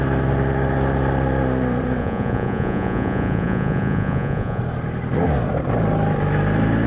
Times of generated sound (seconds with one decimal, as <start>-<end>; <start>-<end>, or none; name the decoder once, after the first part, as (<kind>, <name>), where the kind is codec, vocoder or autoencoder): 2.0-4.6 (vocoder, Vocos)